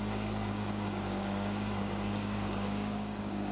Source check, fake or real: fake